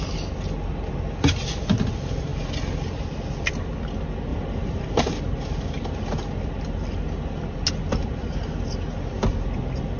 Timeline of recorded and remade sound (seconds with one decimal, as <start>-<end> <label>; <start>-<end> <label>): 0.0-4.3 recorded; 4.3-5.0 remade; 5.0-10.0 recorded